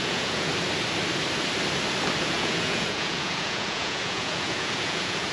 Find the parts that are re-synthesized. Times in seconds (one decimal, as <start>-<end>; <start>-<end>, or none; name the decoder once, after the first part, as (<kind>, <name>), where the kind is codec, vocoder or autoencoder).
0.0-0.5 (vocoder, Vocos); 2.2-5.3